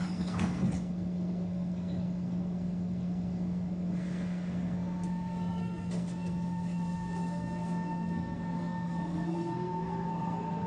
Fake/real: fake